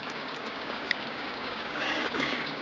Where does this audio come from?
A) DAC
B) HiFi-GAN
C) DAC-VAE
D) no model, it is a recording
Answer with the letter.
A